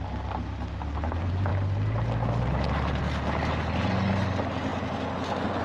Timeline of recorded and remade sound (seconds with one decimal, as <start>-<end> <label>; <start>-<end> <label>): 0.0-5.6 recorded